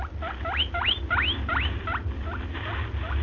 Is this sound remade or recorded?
recorded